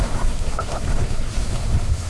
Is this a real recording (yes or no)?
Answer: no